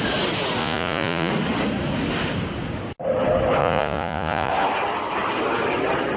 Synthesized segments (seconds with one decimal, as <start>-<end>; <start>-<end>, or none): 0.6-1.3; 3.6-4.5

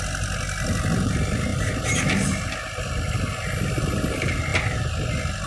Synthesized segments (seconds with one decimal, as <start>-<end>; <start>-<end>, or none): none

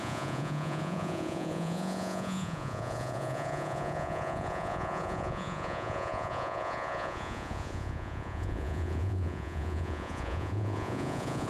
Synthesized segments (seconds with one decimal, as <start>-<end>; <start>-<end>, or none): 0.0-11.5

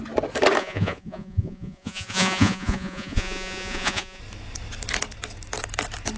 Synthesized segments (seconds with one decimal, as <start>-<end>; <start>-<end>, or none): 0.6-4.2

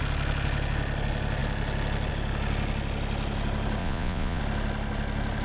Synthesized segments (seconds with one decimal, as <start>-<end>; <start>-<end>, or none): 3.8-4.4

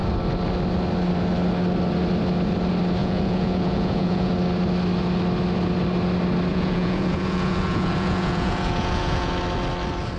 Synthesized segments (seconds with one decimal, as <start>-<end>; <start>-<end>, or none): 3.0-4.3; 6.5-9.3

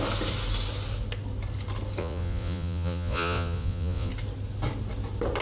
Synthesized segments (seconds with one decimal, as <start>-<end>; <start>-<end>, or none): 2.0-4.1